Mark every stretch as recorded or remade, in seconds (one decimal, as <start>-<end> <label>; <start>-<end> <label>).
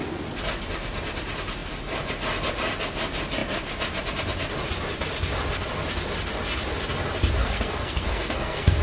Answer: 0.0-7.4 recorded; 7.4-8.8 remade